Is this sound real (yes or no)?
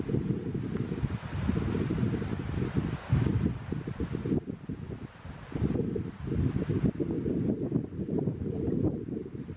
yes